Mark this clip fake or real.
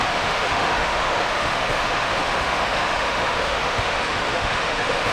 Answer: fake